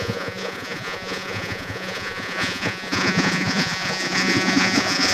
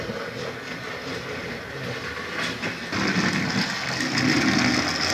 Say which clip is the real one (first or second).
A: second